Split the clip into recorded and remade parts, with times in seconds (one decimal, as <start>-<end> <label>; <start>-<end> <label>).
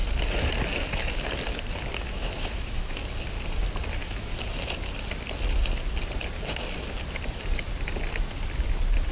0.0-2.0 recorded; 2.0-3.0 remade; 3.0-3.9 recorded; 3.9-4.3 remade; 4.3-9.1 recorded